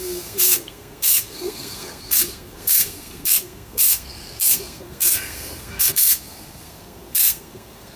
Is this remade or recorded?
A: remade